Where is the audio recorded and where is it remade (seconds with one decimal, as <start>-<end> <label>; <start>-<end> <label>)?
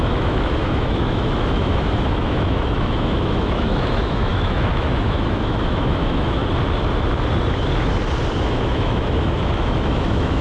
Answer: 0.0-6.4 remade; 6.4-8.4 recorded; 8.4-10.4 remade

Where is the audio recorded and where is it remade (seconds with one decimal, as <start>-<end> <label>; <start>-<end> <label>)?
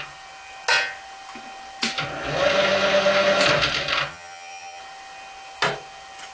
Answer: 0.0-4.1 recorded; 4.1-4.8 remade; 4.8-6.3 recorded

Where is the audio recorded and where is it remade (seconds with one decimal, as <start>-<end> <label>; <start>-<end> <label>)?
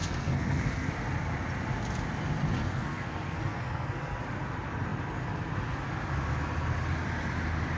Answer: 0.0-0.9 remade; 0.9-2.7 recorded; 2.7-4.2 remade; 4.2-7.8 recorded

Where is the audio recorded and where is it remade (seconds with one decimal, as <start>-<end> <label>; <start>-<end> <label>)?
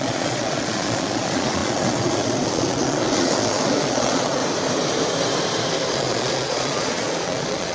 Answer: 0.0-4.4 remade; 4.4-5.9 recorded; 5.9-7.7 remade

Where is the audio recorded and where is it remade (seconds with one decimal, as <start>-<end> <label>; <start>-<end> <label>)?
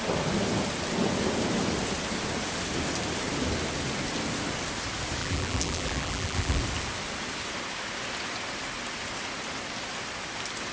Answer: 0.0-5.2 recorded; 5.2-6.6 remade; 6.6-10.7 recorded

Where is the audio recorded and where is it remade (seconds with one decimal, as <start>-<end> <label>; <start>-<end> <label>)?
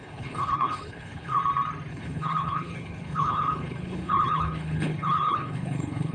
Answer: 0.0-1.4 remade; 1.4-1.9 recorded; 1.9-6.1 remade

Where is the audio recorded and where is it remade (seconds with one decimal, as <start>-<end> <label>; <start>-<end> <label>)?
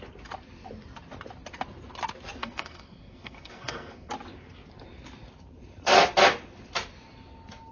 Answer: 0.0-2.4 recorded; 2.4-4.1 remade; 4.1-7.7 recorded